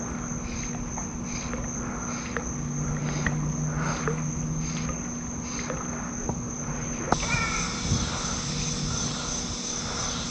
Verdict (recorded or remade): recorded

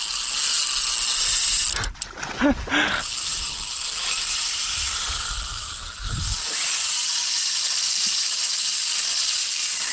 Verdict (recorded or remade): recorded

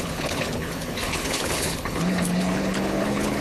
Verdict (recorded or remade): remade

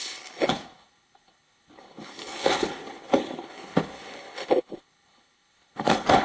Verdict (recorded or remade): remade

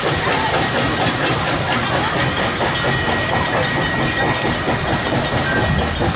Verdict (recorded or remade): recorded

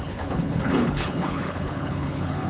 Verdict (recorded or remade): remade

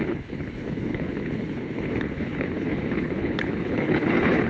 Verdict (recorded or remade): remade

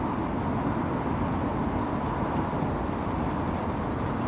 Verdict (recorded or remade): recorded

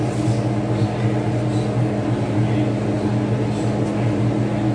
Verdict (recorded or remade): recorded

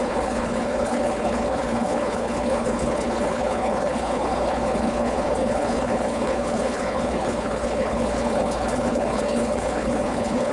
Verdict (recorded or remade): remade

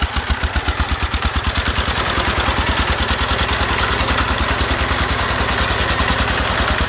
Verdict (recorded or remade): recorded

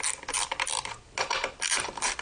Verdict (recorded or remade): recorded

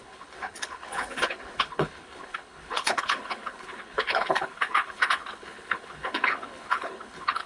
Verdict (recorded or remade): remade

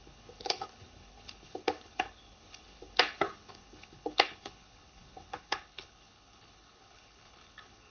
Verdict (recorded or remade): remade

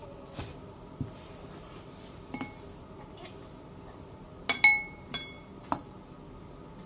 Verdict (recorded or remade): recorded